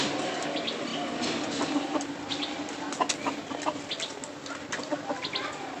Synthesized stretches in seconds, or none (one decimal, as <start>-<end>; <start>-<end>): none

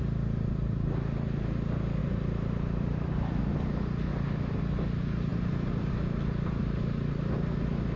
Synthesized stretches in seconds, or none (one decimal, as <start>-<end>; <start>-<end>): 2.0-3.4; 4.1-4.6; 5.3-5.9

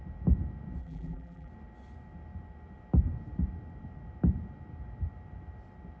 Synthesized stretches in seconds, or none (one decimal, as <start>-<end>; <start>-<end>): 0.8-1.5

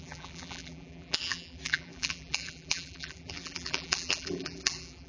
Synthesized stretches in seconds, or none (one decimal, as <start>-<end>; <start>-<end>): 0.0-5.1